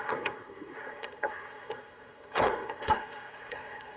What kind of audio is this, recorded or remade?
remade